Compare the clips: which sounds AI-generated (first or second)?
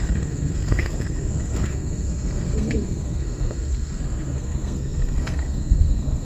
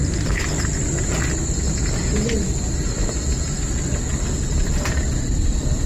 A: first